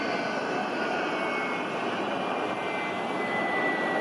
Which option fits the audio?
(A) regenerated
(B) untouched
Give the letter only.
B